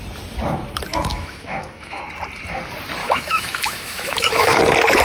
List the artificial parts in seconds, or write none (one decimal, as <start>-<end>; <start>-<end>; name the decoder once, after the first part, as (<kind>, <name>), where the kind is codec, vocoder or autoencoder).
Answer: 0.9-2.0 (autoencoder, DAC-VAE); 3.0-4.6